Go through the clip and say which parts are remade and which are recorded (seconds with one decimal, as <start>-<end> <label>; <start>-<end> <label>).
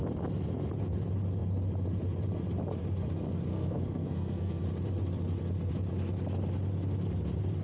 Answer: 0.0-3.5 recorded; 3.5-4.6 remade; 4.6-7.6 recorded